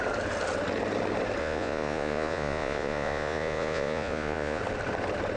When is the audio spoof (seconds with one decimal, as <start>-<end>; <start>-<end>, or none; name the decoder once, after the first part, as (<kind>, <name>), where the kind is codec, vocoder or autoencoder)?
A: 1.4-4.6 (vocoder, Vocos)